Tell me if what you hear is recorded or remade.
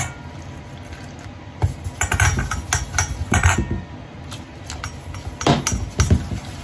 recorded